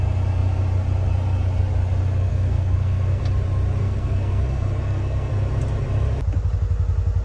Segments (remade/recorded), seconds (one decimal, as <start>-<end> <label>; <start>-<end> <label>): 0.0-2.3 recorded; 2.3-3.2 remade; 3.2-3.8 recorded; 3.8-5.3 remade; 5.3-7.2 recorded